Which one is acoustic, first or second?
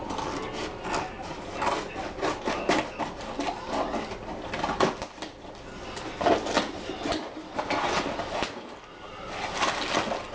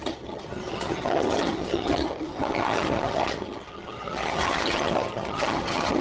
first